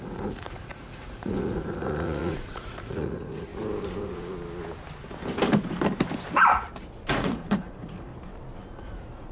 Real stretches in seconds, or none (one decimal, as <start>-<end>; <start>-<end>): 3.5-7.1; 8.1-8.7